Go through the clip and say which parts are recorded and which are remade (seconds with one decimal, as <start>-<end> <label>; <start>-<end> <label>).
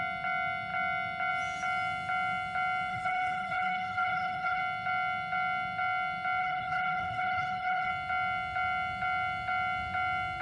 0.0-2.9 recorded; 2.9-4.6 remade; 4.6-6.4 recorded; 6.4-7.9 remade; 7.9-10.4 recorded